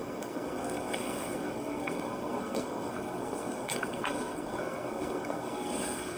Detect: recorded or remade remade